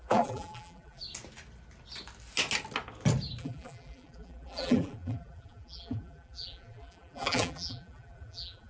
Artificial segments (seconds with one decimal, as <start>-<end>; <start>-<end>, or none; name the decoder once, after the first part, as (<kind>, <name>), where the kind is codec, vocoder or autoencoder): 0.0-1.0 (vocoder, BigVGAN v2); 3.4-8.7